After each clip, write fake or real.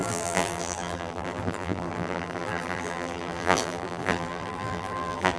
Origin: fake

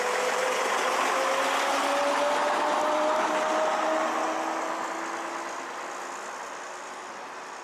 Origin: real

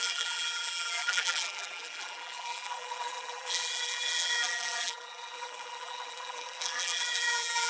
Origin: fake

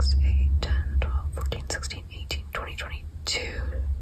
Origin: real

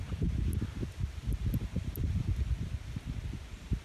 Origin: fake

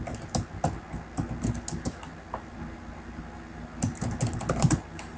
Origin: real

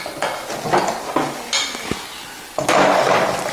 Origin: real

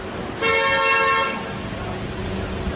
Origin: real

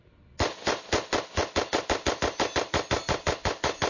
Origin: fake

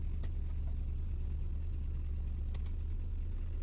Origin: real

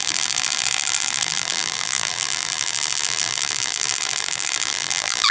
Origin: fake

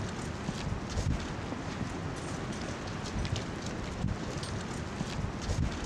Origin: real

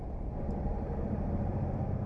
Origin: fake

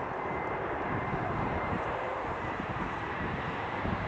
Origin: fake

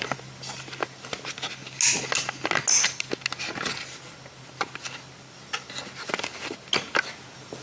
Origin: real